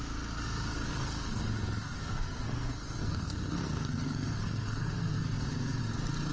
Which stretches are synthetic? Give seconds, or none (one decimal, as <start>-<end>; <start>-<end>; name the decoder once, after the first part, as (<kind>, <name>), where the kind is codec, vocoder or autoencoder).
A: 0.8-1.4 (codec, SNAC); 2.0-5.8